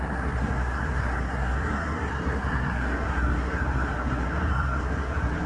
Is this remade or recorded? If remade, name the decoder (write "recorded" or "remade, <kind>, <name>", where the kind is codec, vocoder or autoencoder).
remade, codec, SNAC